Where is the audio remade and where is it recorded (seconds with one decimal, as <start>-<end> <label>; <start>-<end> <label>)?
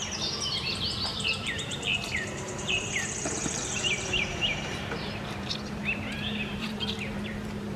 0.0-7.8 remade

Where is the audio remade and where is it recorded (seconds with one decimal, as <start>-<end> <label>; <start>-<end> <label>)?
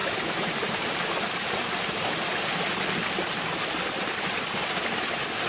0.0-2.3 remade; 2.3-5.5 recorded